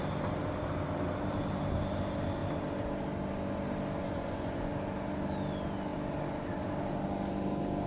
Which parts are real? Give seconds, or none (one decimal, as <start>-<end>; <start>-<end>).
0.0-4.0; 4.7-7.9